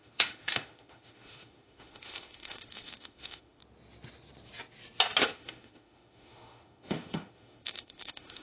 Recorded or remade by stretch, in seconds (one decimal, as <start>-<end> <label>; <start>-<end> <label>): 0.0-3.6 remade; 3.6-5.2 recorded; 5.2-8.4 remade